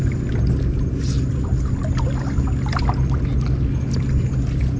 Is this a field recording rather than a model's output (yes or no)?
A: yes